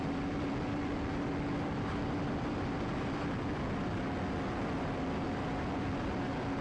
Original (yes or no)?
no